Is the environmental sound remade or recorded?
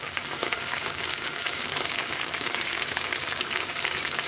remade